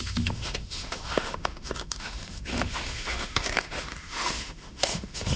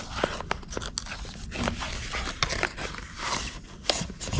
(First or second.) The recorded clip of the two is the second